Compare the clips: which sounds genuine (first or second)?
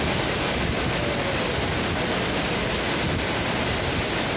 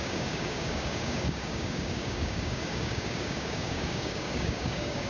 first